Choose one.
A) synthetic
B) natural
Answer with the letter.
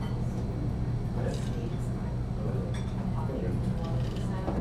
B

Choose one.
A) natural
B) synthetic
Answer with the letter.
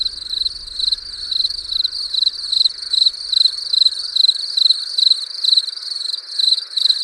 A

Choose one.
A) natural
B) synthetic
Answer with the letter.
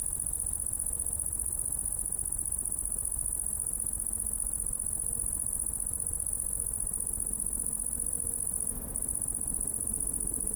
A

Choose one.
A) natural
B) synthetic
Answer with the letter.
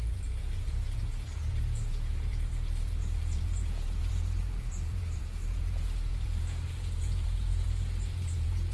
B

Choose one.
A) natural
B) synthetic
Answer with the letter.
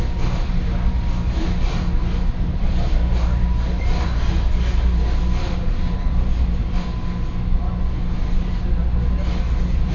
A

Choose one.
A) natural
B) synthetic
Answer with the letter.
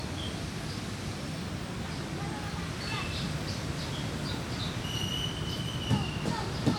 B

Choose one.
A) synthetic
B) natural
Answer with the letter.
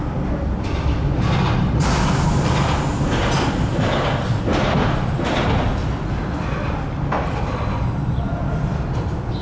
B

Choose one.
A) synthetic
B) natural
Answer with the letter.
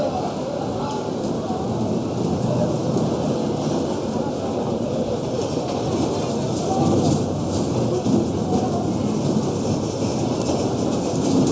B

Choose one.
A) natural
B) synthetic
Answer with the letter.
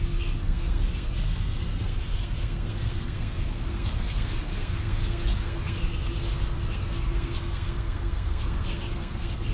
B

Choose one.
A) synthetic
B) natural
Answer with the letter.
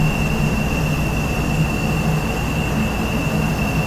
B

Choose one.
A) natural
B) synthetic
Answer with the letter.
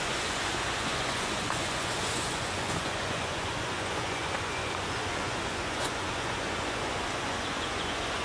B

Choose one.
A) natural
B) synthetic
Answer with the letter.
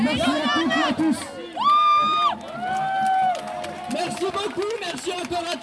A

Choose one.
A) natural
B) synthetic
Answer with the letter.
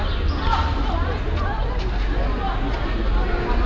A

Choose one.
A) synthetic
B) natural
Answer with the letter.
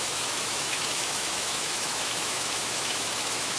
A